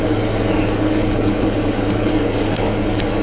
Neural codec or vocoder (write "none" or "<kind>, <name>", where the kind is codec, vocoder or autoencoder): codec, DAC